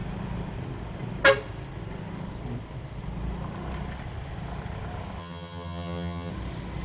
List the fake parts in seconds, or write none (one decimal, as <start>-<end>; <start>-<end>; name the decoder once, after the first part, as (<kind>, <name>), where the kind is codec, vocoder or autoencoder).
5.2-6.3 (vocoder, HiFi-GAN)